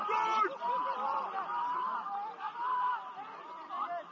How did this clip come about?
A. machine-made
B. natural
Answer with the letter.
A